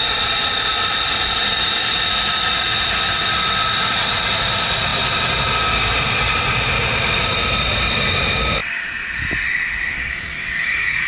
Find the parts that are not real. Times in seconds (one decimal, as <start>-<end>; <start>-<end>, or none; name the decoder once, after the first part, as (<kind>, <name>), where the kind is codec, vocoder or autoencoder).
10.0-11.1 (codec, DAC)